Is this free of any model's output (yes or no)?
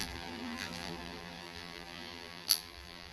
no